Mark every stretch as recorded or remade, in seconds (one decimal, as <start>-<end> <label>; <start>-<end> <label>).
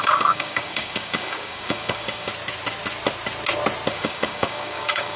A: 0.0-2.3 remade; 2.3-3.9 recorded; 3.9-5.2 remade